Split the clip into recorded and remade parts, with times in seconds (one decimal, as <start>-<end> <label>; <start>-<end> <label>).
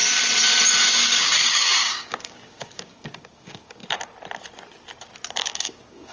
0.0-0.9 recorded; 0.9-3.8 remade; 3.8-5.4 recorded; 5.4-6.1 remade